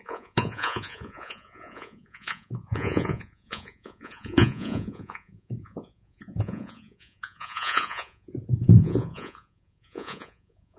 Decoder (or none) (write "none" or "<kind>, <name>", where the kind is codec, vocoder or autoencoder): vocoder, Vocos